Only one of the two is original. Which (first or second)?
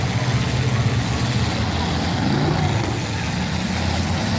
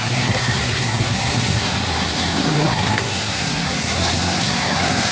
first